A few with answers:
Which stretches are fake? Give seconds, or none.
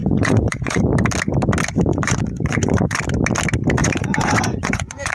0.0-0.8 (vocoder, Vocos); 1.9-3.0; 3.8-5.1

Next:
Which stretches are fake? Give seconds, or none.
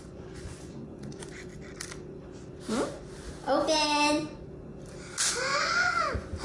0.0-1.5 (vocoder, Vocos); 5.3-6.4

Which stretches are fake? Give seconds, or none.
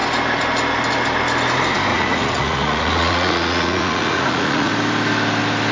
1.9-4.7 (vocoder, Vocos)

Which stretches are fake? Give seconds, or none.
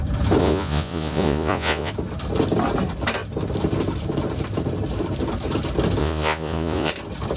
0.4-1.9 (vocoder, Vocos); 6.0-6.9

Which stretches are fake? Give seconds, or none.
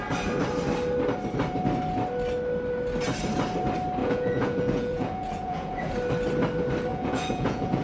4.0-5.9 (vocoder, Vocos); 6.9-7.8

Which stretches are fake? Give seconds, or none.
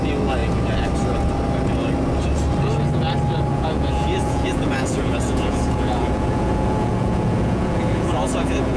3.5-8.8 (vocoder, Vocos)